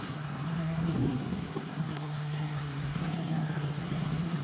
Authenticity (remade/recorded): remade